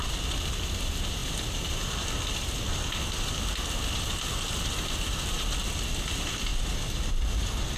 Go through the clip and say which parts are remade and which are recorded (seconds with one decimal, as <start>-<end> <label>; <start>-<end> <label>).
0.0-7.8 recorded